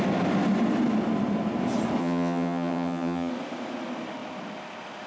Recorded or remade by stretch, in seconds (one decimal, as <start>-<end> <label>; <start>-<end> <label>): 0.0-2.0 recorded; 2.0-3.3 remade; 3.3-5.1 recorded